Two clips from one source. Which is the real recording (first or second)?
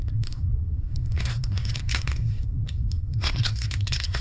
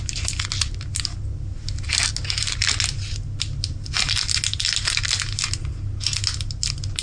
second